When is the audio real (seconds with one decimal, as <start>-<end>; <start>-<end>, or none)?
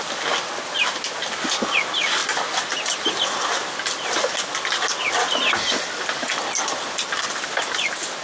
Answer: 0.0-8.2